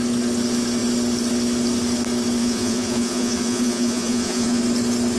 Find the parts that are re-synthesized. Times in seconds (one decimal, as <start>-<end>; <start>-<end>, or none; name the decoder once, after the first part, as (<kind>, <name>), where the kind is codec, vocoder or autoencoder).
2.4-4.6 (vocoder, Vocos)